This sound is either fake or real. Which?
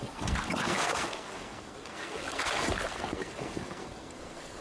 fake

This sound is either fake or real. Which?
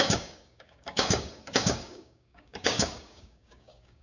fake